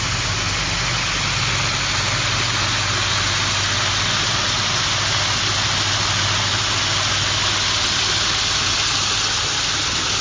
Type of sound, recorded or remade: recorded